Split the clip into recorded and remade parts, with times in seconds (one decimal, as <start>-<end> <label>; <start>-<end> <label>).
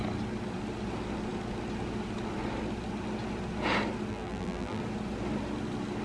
0.0-4.1 recorded; 4.1-4.8 remade; 4.8-6.0 recorded